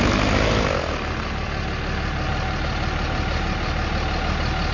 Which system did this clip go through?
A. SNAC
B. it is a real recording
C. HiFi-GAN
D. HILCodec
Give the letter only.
B